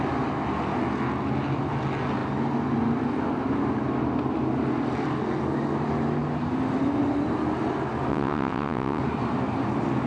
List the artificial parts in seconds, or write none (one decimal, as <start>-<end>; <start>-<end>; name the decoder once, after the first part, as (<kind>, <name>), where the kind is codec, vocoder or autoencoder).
8.1-9.0 (vocoder, WaveNeXt)